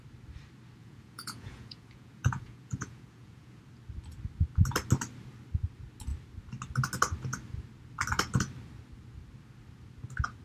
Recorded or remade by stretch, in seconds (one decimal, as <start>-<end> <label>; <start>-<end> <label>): 0.0-0.8 recorded; 0.8-3.6 remade; 3.6-10.4 recorded